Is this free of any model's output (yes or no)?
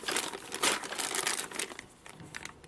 yes